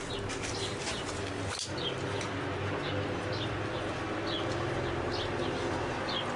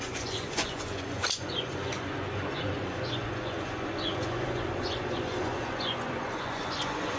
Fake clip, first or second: second